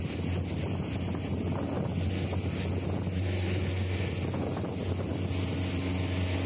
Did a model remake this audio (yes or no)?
no